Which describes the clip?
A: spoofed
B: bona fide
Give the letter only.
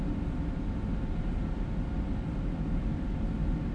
B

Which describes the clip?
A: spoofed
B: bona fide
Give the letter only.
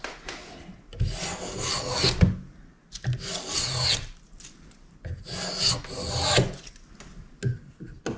B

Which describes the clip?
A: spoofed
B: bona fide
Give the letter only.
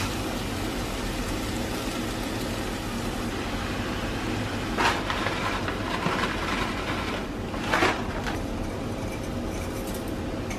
B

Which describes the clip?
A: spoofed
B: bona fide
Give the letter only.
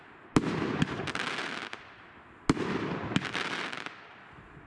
B